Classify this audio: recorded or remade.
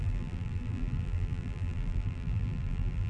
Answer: remade